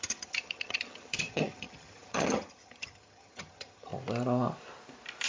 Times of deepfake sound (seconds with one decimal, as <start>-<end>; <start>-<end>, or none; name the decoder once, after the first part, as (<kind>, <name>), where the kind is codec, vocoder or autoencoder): 0.0-3.9 (vocoder, HiFi-GAN)